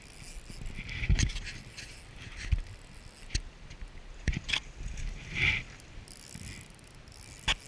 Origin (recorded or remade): recorded